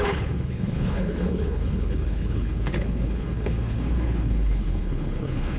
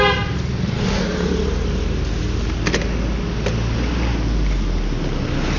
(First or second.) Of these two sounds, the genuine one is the second